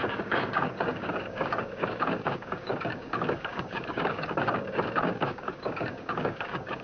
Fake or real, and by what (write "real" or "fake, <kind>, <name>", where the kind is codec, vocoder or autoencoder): fake, codec, DAC